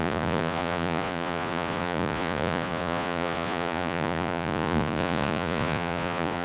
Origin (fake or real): fake